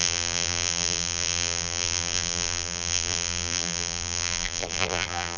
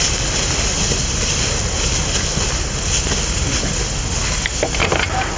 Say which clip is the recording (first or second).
second